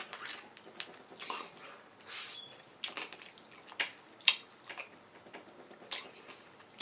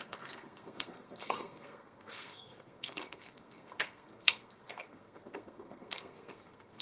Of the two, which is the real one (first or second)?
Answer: first